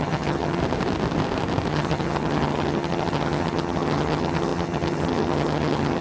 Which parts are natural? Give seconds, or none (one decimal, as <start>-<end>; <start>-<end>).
0.6-1.7